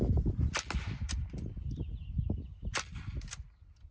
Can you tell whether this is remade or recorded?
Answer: recorded